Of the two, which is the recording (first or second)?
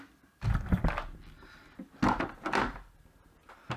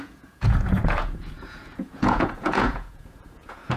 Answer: first